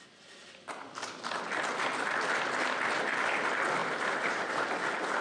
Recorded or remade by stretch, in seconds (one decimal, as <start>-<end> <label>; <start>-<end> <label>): 0.0-3.8 recorded; 3.8-4.7 remade; 4.7-5.2 recorded